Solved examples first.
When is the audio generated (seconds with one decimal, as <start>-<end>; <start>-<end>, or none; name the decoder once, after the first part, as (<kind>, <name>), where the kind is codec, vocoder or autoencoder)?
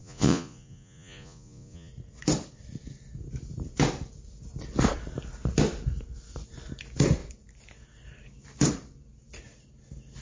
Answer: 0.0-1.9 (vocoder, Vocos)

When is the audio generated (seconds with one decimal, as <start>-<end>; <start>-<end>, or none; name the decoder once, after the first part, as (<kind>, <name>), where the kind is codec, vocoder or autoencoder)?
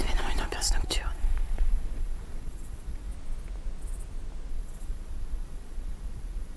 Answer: 0.0-3.1 (vocoder, Vocos); 4.5-6.6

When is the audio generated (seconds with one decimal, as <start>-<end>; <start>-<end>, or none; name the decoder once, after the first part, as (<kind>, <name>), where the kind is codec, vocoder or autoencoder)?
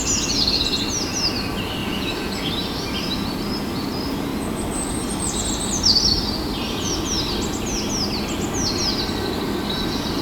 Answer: 1.8-2.5 (vocoder, Vocos)